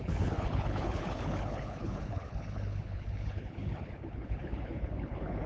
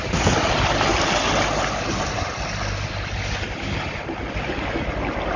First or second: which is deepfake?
first